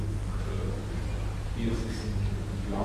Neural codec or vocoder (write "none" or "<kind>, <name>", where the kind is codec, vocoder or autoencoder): none